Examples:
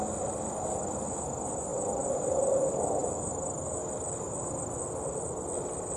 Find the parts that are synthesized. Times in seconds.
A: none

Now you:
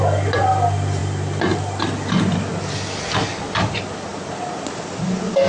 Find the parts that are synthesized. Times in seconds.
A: 1.0-2.5 (vocoder, BigVGAN v2)

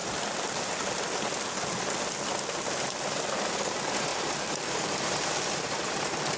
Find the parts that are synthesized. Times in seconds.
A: 3.6-6.4 (vocoder, BigVGAN v2)

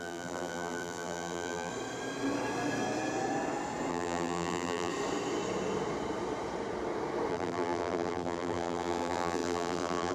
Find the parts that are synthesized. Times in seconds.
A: 0.0-1.7 (vocoder, BigVGAN v2); 3.9-4.9; 7.3-10.1

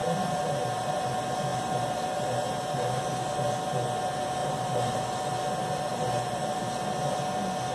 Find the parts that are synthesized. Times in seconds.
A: 0.0-1.1 (vocoder, BigVGAN v2); 1.5-3.0; 4.4-5.2; 5.9-6.6